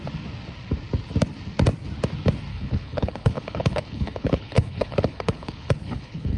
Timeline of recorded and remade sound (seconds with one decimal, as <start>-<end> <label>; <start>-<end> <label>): 0.0-2.5 recorded; 2.5-6.4 remade